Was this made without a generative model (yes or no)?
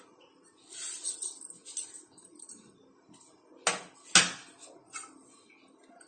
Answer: yes